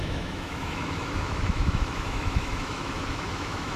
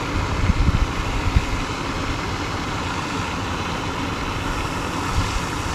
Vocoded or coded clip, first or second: first